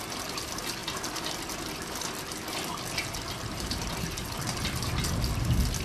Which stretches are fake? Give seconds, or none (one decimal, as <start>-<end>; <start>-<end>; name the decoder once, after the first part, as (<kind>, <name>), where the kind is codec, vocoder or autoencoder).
none